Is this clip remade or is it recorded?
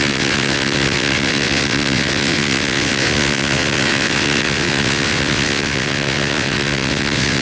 remade